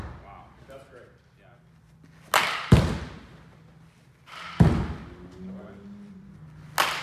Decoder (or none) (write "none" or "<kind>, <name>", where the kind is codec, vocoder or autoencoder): none